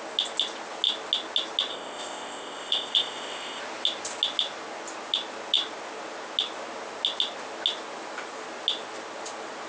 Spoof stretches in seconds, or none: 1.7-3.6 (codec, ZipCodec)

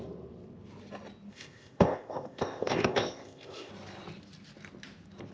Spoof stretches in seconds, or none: 1.3-3.7 (codec, ZipCodec)

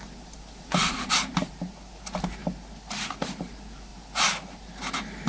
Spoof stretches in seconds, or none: none

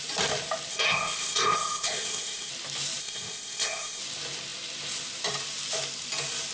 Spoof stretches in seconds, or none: 0.7-2.5 (codec, ZipCodec); 3.0-4.0

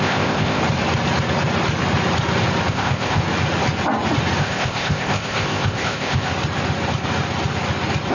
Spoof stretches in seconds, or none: 0.0-0.6 (codec, ZipCodec); 2.7-3.2; 4.4-6.3

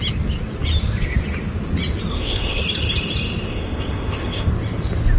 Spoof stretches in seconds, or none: 2.1-2.6 (codec, ZipCodec); 3.5-4.5

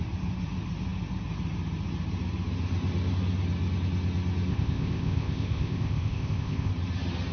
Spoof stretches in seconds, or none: 4.5-6.7 (codec, ZipCodec)